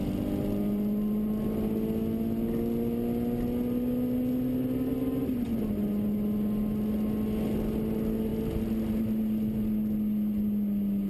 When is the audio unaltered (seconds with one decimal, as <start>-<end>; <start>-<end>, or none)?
0.0-11.1